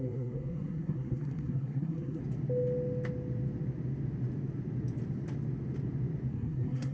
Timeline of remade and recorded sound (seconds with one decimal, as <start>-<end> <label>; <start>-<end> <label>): 0.0-2.2 remade; 2.2-6.3 recorded; 6.3-6.9 remade